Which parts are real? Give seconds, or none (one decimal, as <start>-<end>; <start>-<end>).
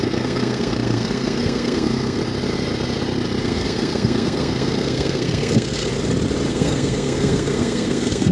2.2-3.4; 5.9-6.5